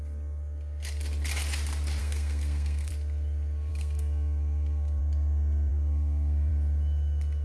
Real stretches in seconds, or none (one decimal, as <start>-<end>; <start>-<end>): 0.0-2.0; 2.9-3.7; 5.0-5.7; 6.5-7.4